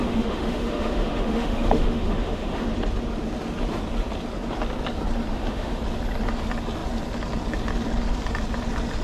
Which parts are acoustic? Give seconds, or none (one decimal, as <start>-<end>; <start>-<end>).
2.7-5.3; 5.8-9.0